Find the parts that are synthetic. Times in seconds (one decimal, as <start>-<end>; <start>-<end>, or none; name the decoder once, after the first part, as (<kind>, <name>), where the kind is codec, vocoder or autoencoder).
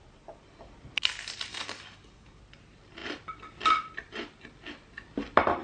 1.5-2.4 (codec, DAC)